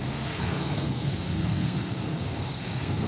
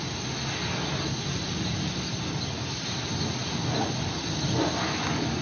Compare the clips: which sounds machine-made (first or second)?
first